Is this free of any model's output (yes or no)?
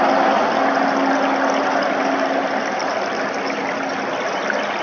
yes